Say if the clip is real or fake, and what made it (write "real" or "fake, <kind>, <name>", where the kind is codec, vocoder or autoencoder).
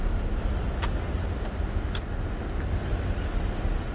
real